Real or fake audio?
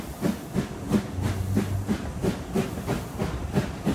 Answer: real